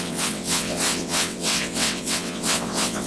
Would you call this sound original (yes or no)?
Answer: no